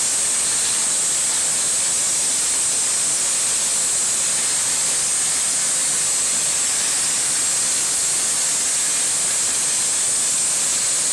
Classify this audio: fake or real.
real